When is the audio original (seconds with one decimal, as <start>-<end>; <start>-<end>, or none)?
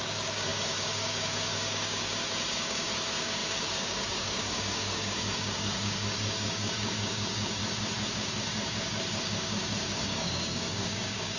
7.6-8.1